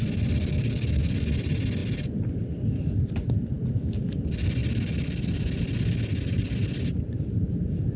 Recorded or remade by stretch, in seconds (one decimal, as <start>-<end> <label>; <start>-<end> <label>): 0.0-0.4 recorded; 0.4-1.0 remade; 1.0-8.0 recorded